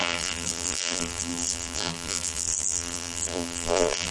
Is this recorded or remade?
remade